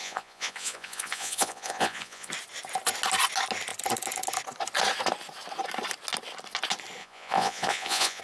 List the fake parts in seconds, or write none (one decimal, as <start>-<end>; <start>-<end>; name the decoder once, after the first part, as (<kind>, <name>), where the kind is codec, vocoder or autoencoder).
0.0-2.3 (vocoder, Vocos); 7.0-8.2